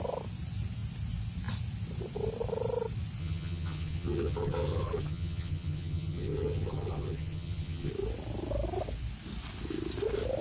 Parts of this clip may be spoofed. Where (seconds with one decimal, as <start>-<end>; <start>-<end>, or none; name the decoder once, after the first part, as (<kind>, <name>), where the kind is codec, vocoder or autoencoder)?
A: 3.2-7.9 (vocoder, HiFi-GAN)